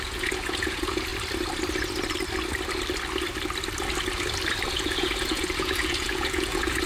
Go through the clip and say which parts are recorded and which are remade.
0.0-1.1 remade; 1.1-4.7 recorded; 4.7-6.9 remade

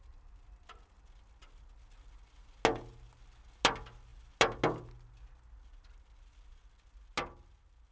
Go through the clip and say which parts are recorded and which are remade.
0.0-7.9 recorded

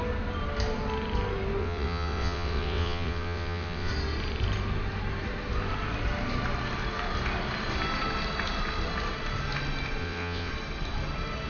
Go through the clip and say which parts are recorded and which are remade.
0.0-1.6 recorded; 1.6-3.9 remade; 3.9-10.0 recorded; 10.0-10.5 remade; 10.5-11.5 recorded

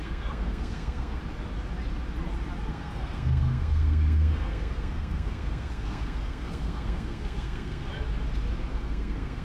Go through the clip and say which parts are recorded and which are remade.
0.0-1.2 remade; 1.2-2.7 recorded; 2.7-7.9 remade; 7.9-8.7 recorded; 8.7-9.4 remade

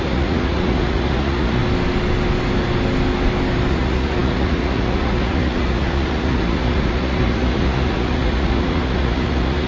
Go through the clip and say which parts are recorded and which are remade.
0.0-1.6 remade; 1.6-3.7 recorded; 3.7-9.7 remade

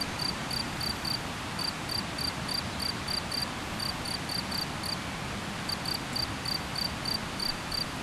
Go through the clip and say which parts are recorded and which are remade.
0.0-8.0 recorded

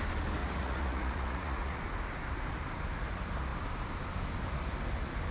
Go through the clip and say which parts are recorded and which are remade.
0.0-0.4 recorded; 0.4-1.8 remade; 1.8-5.3 recorded